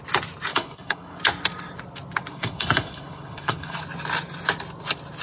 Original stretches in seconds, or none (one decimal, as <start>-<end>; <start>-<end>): 0.0-0.5; 1.2-2.3; 3.8-5.2

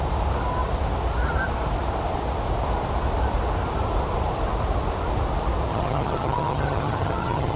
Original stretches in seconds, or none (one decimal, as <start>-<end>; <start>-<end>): 0.0-5.7

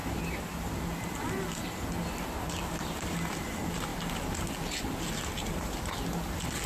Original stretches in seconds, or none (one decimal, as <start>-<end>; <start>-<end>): 1.6-3.4

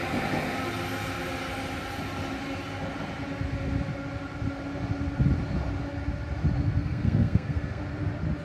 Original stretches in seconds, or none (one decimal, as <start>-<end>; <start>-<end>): 0.0-6.8; 7.8-8.4

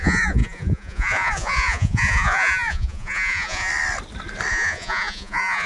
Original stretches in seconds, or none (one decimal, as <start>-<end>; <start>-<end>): 3.7-4.5